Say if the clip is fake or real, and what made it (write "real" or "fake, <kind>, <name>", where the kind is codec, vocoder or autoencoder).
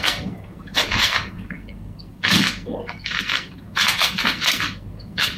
fake, codec, SNAC